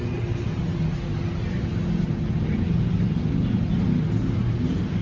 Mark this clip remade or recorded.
recorded